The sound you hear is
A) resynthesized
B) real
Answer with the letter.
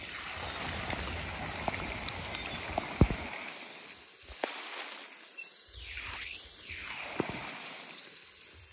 B